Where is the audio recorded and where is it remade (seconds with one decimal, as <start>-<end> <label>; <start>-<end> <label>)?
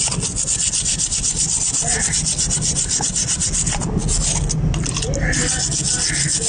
0.0-6.5 recorded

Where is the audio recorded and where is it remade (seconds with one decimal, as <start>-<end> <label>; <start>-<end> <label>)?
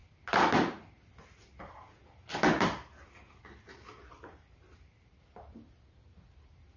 0.0-6.8 recorded